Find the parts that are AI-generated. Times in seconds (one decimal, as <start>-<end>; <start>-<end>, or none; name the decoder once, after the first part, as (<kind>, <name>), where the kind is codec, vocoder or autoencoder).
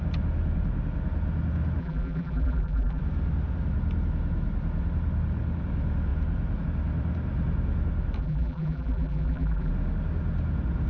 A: 1.8-3.0 (vocoder, BigVGAN v2); 8.2-9.7